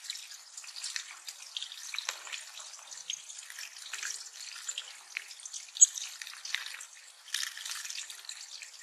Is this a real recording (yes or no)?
yes